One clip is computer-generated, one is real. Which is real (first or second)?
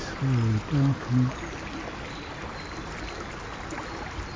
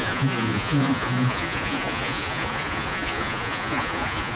first